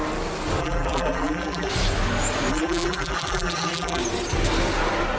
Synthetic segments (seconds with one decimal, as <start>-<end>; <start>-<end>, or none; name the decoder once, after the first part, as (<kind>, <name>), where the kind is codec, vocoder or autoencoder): 0.6-1.7 (vocoder, BigVGAN v2); 2.5-4.0